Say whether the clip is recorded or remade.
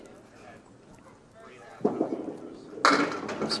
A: recorded